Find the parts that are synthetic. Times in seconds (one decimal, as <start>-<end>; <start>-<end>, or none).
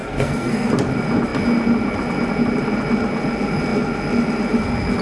0.0-0.7